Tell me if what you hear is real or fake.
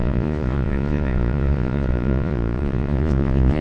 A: fake